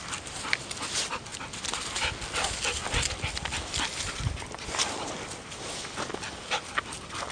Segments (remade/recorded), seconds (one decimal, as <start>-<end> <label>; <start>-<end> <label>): 0.0-1.3 recorded; 1.3-2.0 remade; 2.0-7.3 recorded